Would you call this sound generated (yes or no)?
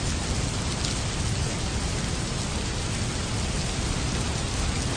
no